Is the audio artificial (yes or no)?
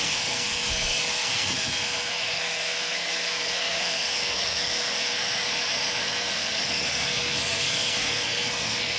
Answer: yes